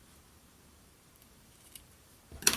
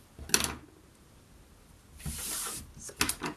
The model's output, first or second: first